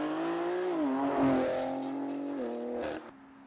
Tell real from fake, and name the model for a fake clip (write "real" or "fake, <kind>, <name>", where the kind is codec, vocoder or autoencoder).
real